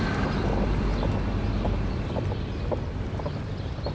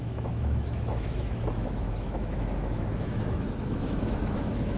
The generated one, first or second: second